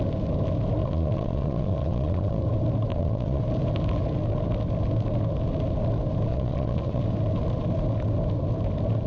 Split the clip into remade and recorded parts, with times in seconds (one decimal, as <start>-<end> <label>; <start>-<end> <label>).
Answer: 0.0-0.8 recorded; 0.8-2.4 remade; 2.4-2.9 recorded; 2.9-3.4 remade; 3.4-6.3 recorded; 6.3-7.0 remade; 7.0-9.1 recorded